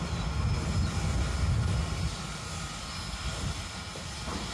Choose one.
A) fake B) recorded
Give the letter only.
B